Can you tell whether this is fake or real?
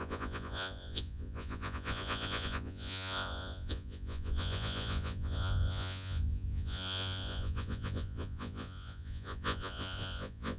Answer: fake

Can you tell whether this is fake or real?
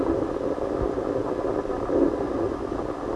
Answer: real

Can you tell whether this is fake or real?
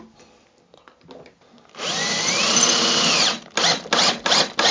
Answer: real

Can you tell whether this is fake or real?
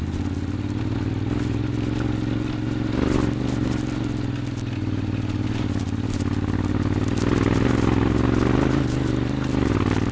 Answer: real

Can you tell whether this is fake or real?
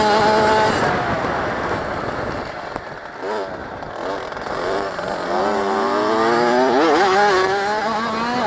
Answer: real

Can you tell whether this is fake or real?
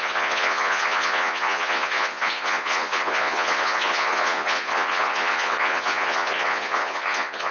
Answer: fake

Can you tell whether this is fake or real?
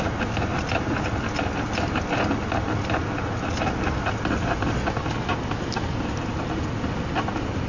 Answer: real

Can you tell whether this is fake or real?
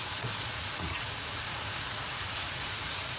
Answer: fake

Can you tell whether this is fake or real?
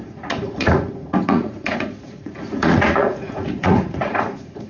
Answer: fake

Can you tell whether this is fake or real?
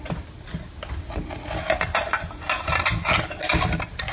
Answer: real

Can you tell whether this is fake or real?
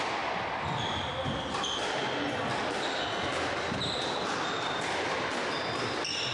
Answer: real